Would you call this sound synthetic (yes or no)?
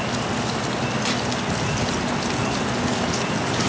no